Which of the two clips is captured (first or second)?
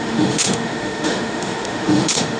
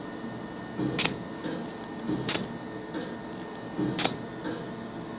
second